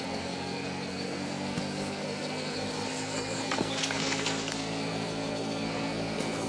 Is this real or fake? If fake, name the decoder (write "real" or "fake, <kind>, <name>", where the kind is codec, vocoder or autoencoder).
fake, codec, SNAC